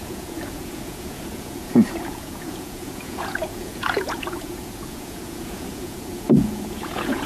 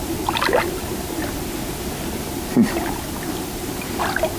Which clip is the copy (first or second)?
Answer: first